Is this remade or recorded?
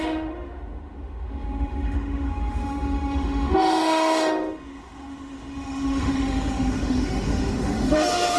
remade